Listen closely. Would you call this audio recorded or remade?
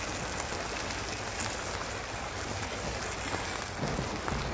recorded